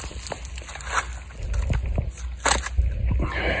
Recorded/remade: recorded